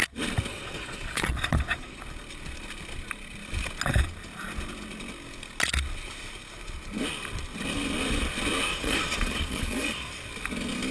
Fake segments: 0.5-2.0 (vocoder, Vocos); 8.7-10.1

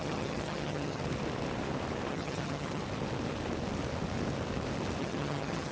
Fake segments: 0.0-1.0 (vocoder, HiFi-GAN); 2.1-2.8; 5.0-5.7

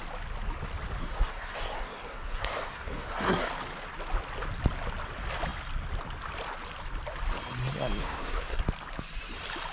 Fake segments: 1.0-3.5 (codec, SNAC); 8.0-8.6